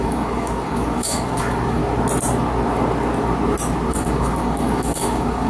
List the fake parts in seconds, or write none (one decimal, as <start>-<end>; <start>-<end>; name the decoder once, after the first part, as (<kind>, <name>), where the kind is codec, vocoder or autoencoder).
0.0-1.8 (codec, DAC); 3.9-5.5